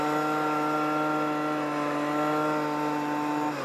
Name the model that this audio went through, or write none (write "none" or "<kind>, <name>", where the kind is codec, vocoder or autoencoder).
none